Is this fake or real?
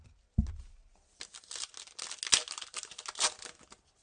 real